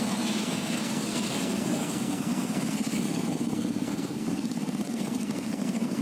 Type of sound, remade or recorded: remade